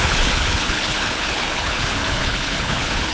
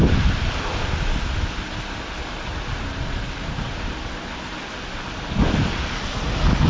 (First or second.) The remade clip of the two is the first